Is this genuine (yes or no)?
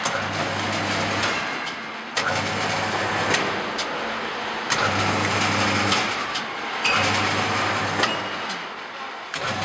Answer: yes